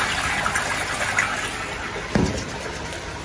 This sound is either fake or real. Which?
real